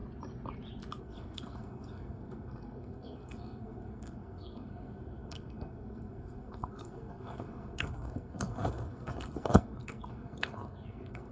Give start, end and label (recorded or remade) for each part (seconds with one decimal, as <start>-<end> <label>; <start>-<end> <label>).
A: 0.0-1.0 recorded; 1.0-11.3 remade